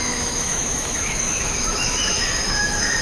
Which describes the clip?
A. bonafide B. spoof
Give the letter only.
B